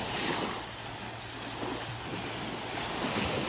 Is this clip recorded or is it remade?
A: recorded